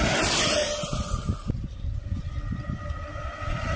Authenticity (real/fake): real